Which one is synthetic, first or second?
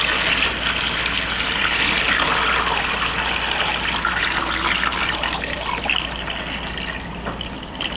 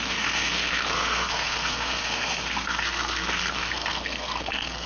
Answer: second